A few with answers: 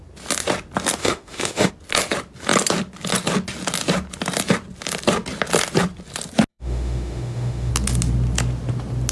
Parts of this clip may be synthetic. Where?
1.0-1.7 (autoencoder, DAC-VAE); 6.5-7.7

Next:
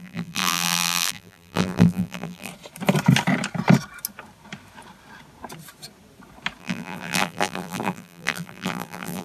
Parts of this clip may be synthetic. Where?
0.0-2.5 (vocoder, BigVGAN v2); 6.6-9.2

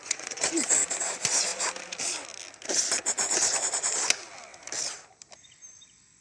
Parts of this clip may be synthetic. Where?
0.0-0.7 (vocoder, Vocos)

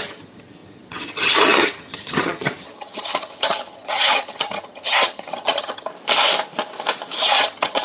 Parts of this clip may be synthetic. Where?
0.0-5.9 (vocoder, HiFi-GAN); 7.3-7.8